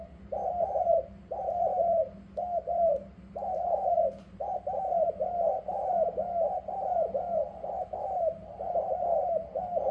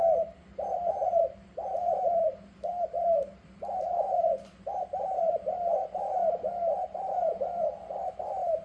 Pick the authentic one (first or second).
first